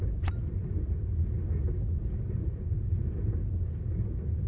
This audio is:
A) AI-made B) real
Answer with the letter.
B